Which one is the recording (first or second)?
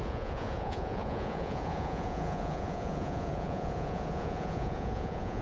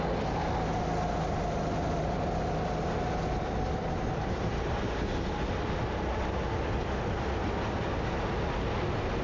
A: second